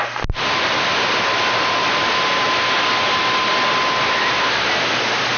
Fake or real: real